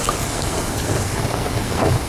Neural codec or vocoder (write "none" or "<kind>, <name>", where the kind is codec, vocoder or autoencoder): codec, SNAC